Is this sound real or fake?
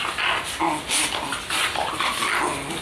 real